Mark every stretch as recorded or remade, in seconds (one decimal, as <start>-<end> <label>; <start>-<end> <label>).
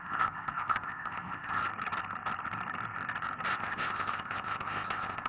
0.0-1.6 remade; 1.6-3.5 recorded; 3.5-5.3 remade